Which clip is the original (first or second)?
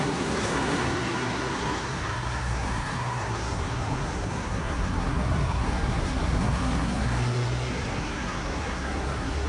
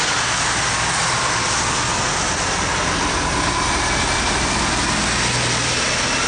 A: second